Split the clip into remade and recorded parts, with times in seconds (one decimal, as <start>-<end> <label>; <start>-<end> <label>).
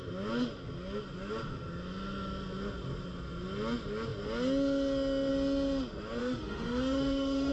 0.0-6.2 recorded; 6.2-7.5 remade